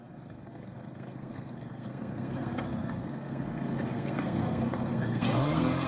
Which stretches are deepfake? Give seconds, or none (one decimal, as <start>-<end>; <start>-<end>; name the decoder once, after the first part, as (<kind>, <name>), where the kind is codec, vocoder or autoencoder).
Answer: 0.0-5.9 (codec, SNAC)